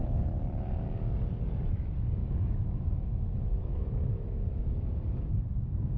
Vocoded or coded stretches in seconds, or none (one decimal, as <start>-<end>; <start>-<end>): 2.2-5.3